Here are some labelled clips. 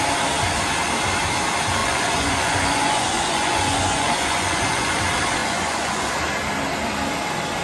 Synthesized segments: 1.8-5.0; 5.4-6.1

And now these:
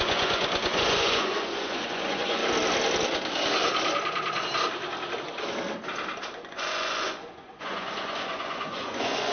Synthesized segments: 0.0-2.4; 6.5-9.3

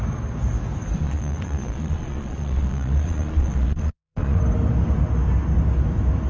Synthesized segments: 1.0-4.4